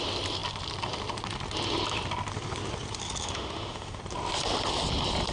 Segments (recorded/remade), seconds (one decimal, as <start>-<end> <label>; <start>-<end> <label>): 0.0-3.2 recorded; 3.2-4.0 remade; 4.0-5.3 recorded